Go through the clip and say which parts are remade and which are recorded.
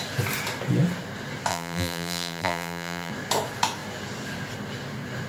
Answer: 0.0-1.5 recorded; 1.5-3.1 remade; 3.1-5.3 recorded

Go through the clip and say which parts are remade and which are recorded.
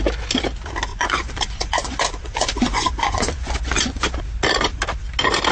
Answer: 0.0-0.9 recorded; 0.9-4.2 remade; 4.2-5.5 recorded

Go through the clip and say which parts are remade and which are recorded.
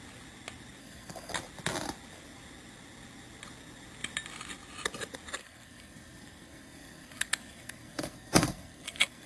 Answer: 0.0-0.8 recorded; 0.8-1.3 remade; 1.3-5.4 recorded; 5.4-9.3 remade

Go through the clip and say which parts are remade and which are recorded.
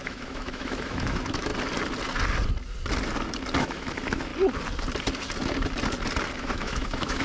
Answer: 0.0-1.5 remade; 1.5-3.6 recorded; 3.6-4.3 remade; 4.3-6.4 recorded; 6.4-7.2 remade